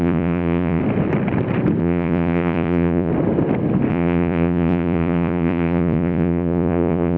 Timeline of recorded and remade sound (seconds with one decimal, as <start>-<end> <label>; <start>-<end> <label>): 0.0-0.8 remade; 0.8-1.8 recorded; 1.8-3.1 remade; 3.1-3.9 recorded; 3.9-7.2 remade